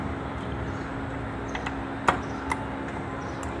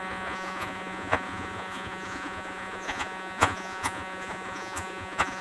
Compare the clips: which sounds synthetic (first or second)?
second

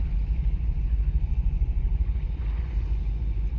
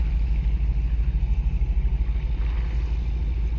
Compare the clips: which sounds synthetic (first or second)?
first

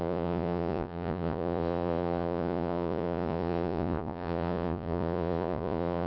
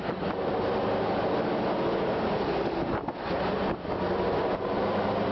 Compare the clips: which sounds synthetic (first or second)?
first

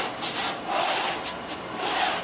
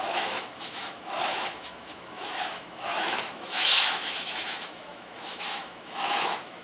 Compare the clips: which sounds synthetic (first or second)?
second